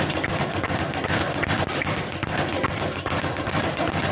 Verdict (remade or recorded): recorded